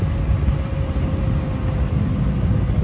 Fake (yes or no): no